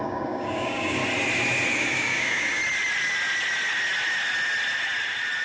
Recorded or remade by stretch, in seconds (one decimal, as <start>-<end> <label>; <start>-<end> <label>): 0.0-1.0 remade; 1.0-1.7 recorded; 1.7-2.6 remade; 2.6-5.4 recorded